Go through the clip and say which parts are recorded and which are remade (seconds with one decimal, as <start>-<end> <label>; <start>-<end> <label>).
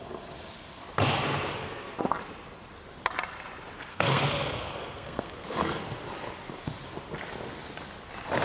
0.0-1.5 recorded; 1.5-2.0 remade; 2.0-3.9 recorded; 3.9-5.8 remade; 5.8-8.4 recorded